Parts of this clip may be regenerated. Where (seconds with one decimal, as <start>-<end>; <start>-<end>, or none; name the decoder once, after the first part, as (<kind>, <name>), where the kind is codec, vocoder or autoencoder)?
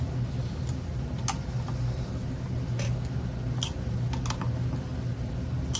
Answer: none